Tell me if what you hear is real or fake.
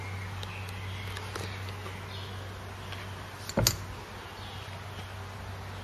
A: real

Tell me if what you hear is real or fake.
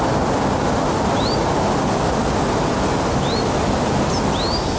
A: real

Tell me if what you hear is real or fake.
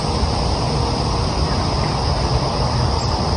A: real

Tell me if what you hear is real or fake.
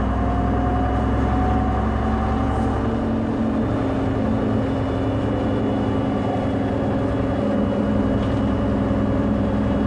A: real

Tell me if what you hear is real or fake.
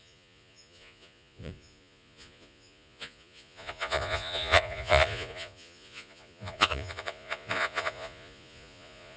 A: fake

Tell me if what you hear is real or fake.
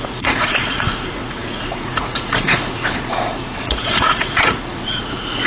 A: fake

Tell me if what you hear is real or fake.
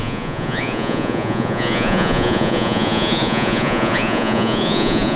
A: fake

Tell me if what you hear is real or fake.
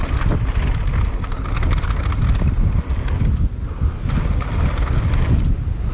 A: real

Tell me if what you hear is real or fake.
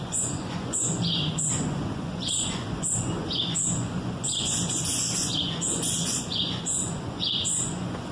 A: fake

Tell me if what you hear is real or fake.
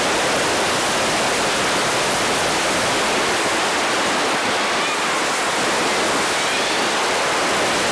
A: real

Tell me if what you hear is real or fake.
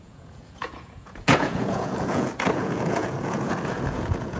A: fake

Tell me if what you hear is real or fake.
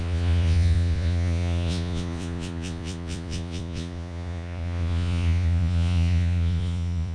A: fake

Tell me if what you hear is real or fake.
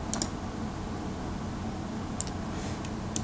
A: real